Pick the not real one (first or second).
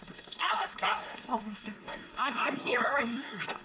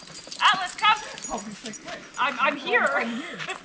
first